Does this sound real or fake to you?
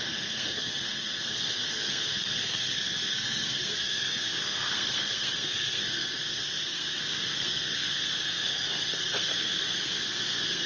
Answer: fake